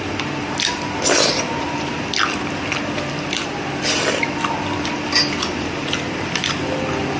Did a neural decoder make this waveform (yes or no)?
no